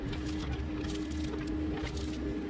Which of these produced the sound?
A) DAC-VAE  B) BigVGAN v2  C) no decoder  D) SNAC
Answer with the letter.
C